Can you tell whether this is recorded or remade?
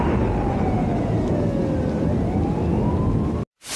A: recorded